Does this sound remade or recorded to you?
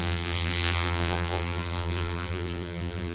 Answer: remade